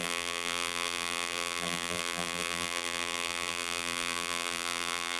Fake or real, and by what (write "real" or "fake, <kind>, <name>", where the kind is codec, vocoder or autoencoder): fake, vocoder, BigVGAN v2